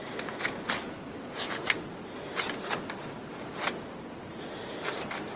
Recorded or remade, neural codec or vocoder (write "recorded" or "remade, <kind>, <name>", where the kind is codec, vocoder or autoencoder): recorded